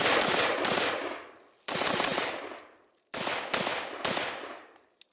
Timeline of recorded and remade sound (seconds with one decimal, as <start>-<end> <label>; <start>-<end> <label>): 0.0-5.1 recorded